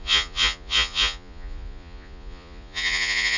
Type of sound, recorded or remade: remade